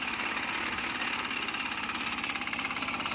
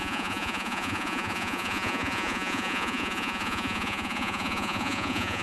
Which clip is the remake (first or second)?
second